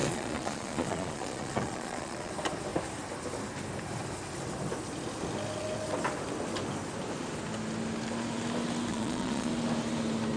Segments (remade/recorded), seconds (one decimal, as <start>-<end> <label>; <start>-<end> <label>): 0.0-2.3 remade; 2.3-8.9 recorded; 8.9-9.5 remade; 9.5-10.4 recorded